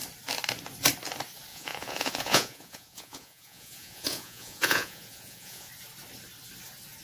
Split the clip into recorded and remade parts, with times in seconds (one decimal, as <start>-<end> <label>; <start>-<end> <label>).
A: 0.0-1.5 recorded; 1.5-5.7 remade; 5.7-7.0 recorded